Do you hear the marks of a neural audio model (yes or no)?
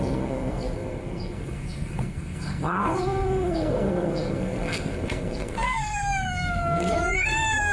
yes